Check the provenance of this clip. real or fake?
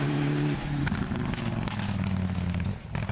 real